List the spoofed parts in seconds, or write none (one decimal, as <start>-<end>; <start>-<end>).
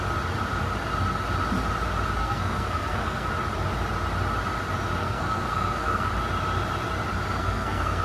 2.2-3.3; 5.0-6.1; 7.3-8.0